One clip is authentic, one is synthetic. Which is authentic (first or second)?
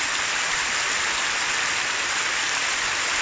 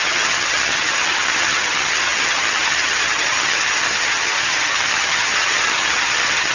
first